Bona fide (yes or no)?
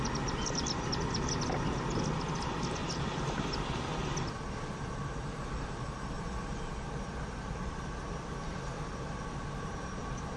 yes